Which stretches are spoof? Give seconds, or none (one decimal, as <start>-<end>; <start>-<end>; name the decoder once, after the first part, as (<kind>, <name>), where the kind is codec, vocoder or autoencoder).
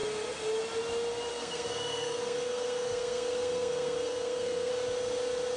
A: 1.3-4.7 (codec, SNAC)